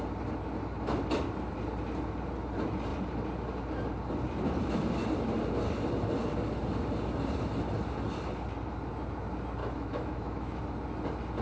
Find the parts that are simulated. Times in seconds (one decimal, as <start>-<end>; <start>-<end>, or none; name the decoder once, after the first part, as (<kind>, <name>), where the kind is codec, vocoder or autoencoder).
9.6-10.6 (autoencoder, DAC-VAE)